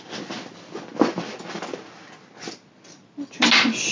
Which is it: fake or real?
real